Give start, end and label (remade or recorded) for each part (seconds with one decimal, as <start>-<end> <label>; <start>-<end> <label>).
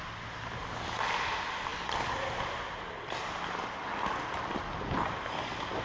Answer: 0.0-5.8 recorded